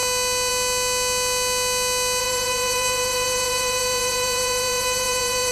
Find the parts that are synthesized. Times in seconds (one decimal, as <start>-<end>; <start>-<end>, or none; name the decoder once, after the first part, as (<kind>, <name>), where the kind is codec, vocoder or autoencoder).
2.2-5.5 (vocoder, Vocos)